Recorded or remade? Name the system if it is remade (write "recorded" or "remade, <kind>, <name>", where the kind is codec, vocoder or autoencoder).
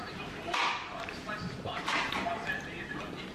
recorded